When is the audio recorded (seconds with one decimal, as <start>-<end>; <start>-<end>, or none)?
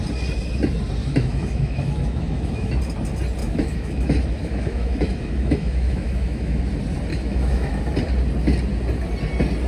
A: 0.0-1.0; 2.8-3.4; 6.6-7.1; 7.8-9.7